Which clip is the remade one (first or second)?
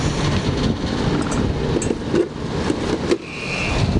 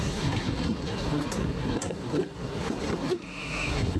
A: second